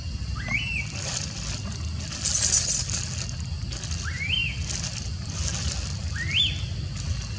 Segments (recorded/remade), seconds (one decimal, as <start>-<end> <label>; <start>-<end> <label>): 0.0-7.4 recorded